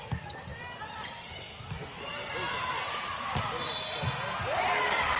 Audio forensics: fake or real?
real